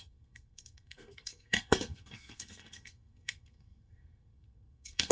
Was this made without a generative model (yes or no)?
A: no